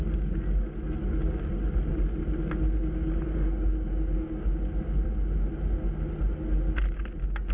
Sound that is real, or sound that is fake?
real